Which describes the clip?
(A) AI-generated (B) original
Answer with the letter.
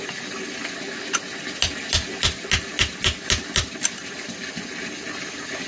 B